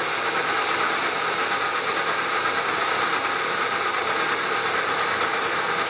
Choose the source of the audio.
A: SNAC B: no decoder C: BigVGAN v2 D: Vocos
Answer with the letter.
B